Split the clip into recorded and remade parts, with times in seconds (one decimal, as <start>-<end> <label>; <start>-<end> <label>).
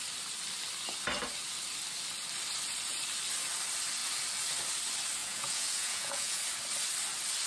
0.0-5.2 recorded; 5.2-6.4 remade; 6.4-7.5 recorded